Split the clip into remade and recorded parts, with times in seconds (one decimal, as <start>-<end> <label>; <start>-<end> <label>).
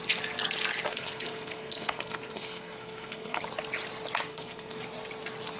0.0-0.9 recorded; 0.9-3.4 remade; 3.4-4.3 recorded; 4.3-4.8 remade; 4.8-5.6 recorded